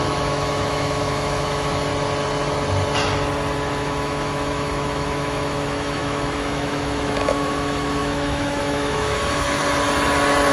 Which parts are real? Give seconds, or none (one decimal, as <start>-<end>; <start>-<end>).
1.9-3.7; 9.6-10.5